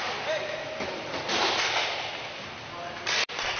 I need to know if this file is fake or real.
real